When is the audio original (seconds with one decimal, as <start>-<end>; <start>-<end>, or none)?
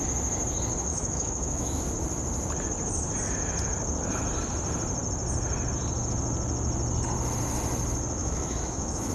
0.0-0.9; 1.8-8.2